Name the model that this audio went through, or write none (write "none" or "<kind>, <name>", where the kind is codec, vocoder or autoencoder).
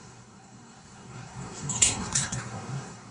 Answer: codec, SNAC